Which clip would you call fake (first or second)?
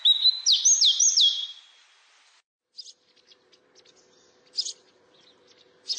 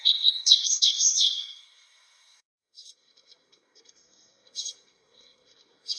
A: second